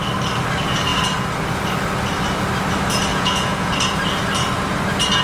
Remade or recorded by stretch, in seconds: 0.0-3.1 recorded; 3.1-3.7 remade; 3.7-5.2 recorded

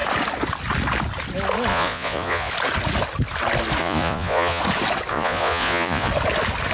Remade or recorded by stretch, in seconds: 0.0-1.7 recorded; 1.7-2.5 remade; 2.5-3.8 recorded; 3.8-4.6 remade; 4.6-5.1 recorded; 5.1-6.1 remade; 6.1-6.7 recorded

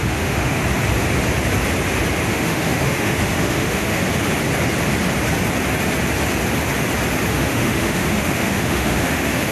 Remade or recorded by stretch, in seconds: 0.0-0.6 remade; 0.6-2.3 recorded; 2.3-4.0 remade; 4.0-7.3 recorded; 7.3-9.5 remade

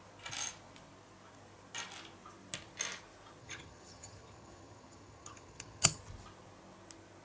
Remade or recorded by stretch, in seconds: 0.0-3.4 recorded; 3.4-6.0 remade; 6.0-7.2 recorded

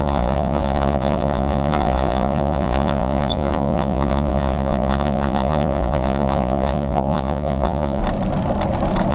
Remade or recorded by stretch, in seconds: 0.0-8.0 remade; 8.0-9.1 recorded

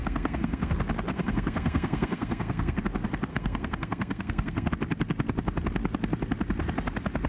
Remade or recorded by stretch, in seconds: 0.0-0.7 remade; 0.7-1.1 recorded; 1.1-2.8 remade; 2.8-3.3 recorded; 3.3-4.7 remade; 4.7-7.3 recorded

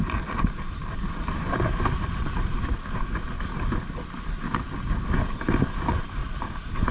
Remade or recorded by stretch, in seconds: 0.0-6.2 recorded; 6.2-6.9 remade

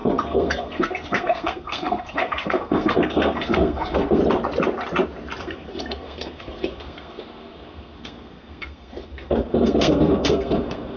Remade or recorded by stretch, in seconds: 0.0-4.2 remade; 4.2-5.4 recorded; 5.4-11.0 remade